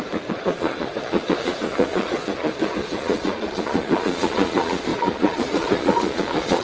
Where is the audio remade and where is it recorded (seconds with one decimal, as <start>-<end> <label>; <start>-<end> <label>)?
0.0-6.6 remade